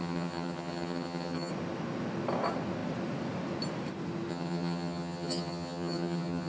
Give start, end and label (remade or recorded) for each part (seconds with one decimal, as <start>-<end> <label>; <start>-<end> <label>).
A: 0.0-1.5 remade; 1.5-4.3 recorded; 4.3-6.5 remade

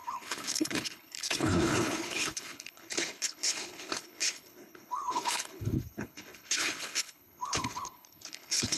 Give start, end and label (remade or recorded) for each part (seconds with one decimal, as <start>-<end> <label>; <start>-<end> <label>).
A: 0.0-8.8 remade

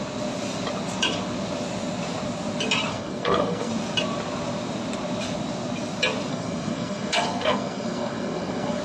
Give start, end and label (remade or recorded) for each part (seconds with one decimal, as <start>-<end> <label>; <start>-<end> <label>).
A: 0.0-2.9 recorded; 2.9-3.7 remade; 3.7-6.3 recorded; 6.3-8.8 remade

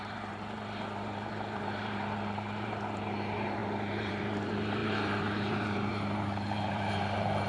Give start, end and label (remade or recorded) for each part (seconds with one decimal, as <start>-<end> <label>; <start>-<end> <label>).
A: 0.0-7.5 remade

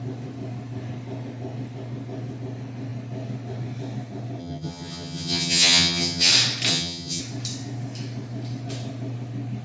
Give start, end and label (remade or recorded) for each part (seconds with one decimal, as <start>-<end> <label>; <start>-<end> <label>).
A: 0.0-4.4 recorded; 4.4-6.3 remade; 6.3-6.7 recorded; 6.7-7.2 remade; 7.2-9.6 recorded